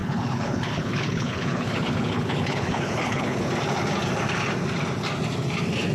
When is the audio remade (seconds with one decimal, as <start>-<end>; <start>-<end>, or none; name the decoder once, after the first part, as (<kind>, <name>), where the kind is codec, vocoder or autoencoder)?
0.0-3.5 (codec, HILCodec)